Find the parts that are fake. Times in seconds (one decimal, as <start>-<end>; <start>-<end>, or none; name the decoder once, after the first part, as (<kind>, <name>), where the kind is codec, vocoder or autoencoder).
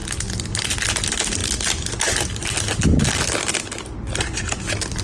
none